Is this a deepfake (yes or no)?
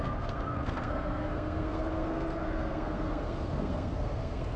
yes